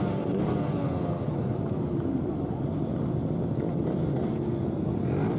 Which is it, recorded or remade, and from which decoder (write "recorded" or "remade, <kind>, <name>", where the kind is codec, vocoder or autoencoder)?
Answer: recorded